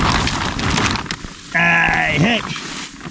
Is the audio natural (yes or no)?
yes